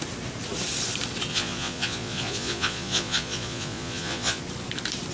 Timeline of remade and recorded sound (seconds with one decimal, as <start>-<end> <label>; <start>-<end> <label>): 0.0-1.3 recorded; 1.3-4.4 remade; 4.4-5.1 recorded

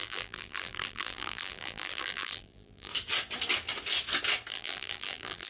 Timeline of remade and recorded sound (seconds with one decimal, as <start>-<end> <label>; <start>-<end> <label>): 0.0-2.9 remade; 2.9-4.5 recorded; 4.5-5.5 remade